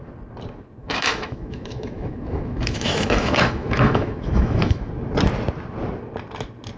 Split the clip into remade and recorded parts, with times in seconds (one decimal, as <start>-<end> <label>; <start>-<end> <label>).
0.0-0.8 recorded; 0.8-4.9 remade; 4.9-6.8 recorded